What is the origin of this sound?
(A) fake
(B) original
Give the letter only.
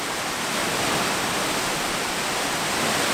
B